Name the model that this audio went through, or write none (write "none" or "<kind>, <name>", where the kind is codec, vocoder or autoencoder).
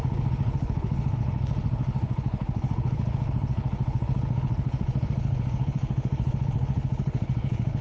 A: codec, HILCodec